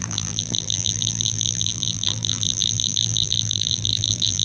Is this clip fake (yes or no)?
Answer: yes